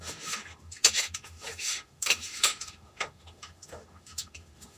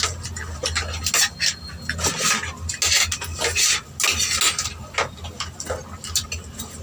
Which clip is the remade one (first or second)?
first